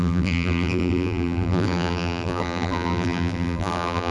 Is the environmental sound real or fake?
fake